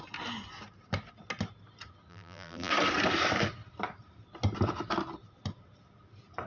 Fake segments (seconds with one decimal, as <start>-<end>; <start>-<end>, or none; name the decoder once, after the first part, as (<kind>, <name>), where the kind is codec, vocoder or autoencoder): 2.1-2.7 (vocoder, BigVGAN v2)